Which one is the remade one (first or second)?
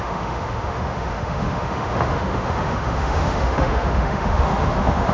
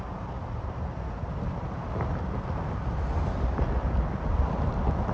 first